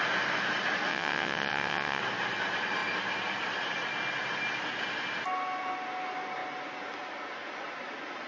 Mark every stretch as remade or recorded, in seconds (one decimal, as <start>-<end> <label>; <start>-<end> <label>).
0.0-0.9 recorded; 0.9-2.0 remade; 2.0-8.3 recorded